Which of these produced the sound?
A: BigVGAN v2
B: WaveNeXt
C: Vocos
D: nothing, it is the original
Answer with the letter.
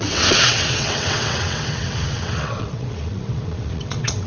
B